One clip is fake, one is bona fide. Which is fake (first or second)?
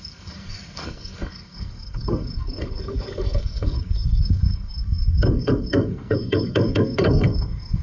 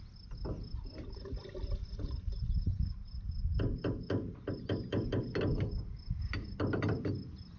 first